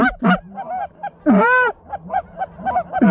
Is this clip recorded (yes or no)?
no